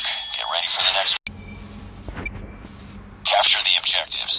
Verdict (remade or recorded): recorded